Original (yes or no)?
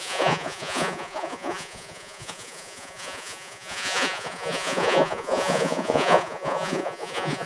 no